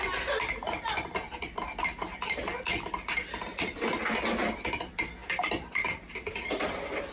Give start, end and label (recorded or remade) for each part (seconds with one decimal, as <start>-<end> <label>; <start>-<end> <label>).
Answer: 0.0-7.1 recorded